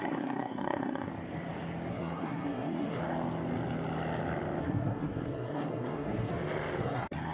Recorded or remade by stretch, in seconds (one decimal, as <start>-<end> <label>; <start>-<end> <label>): 0.0-1.1 remade; 1.1-1.9 recorded; 1.9-3.0 remade; 3.0-4.6 recorded; 4.6-6.3 remade; 6.3-6.8 recorded; 6.8-7.3 remade